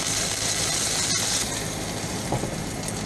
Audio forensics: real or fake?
real